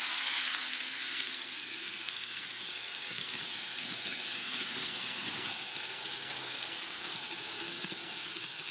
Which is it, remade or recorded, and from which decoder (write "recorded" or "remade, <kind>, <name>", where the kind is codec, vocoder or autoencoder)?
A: remade, codec, SNAC